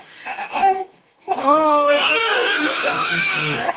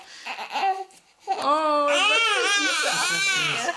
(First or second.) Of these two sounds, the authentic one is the second